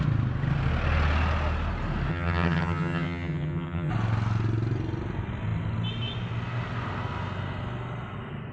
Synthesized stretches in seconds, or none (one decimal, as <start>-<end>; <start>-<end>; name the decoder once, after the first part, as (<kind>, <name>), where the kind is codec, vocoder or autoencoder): 2.1-3.9 (vocoder, HiFi-GAN)